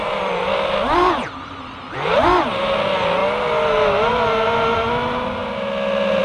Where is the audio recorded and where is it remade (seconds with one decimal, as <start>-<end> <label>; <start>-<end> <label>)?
0.0-0.5 remade; 0.5-5.4 recorded; 5.4-6.2 remade